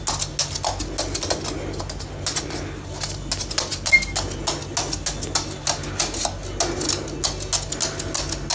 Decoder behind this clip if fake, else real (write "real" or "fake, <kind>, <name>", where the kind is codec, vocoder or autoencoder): real